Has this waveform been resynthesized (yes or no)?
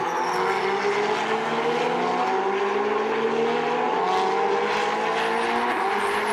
no